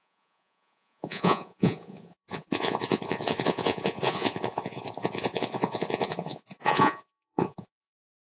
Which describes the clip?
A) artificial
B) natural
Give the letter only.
A